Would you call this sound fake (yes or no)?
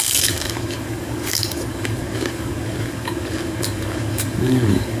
yes